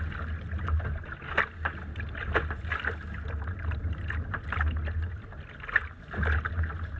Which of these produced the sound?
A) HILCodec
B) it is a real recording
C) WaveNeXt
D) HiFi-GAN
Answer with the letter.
B